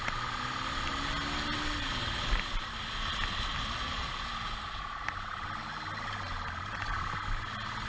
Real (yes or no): yes